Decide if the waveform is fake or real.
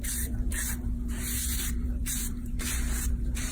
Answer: fake